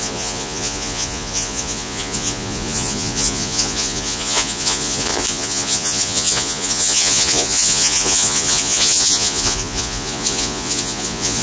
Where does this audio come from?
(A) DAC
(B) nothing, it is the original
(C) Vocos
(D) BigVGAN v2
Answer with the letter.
C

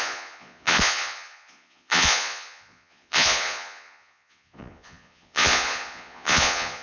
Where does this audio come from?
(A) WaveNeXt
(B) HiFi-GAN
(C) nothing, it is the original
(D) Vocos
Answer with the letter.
D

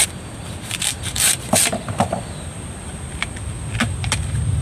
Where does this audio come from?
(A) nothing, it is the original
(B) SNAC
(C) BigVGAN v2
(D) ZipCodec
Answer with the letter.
C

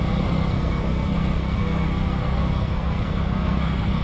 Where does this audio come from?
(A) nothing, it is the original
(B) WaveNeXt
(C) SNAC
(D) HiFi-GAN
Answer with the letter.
C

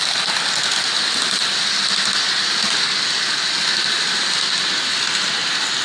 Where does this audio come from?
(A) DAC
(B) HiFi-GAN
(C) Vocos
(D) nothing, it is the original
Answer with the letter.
D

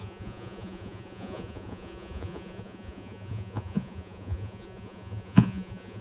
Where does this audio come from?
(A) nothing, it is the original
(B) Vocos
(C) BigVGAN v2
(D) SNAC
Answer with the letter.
B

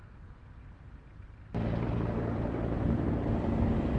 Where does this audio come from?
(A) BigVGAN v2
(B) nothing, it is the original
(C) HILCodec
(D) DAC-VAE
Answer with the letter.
A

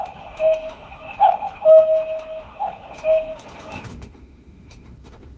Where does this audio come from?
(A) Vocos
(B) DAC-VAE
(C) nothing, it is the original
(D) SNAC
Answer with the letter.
B